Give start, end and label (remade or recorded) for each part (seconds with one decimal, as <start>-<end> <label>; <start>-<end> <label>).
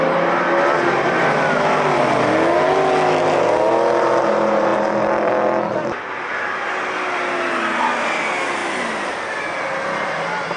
0.0-10.6 recorded